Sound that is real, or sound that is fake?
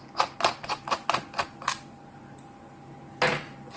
real